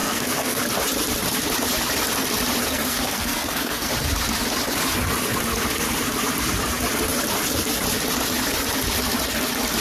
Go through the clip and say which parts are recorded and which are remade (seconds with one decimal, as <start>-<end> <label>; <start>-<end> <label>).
0.0-0.6 remade; 0.6-2.6 recorded; 2.6-3.9 remade; 3.9-9.8 recorded